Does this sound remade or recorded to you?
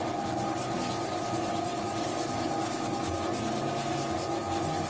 recorded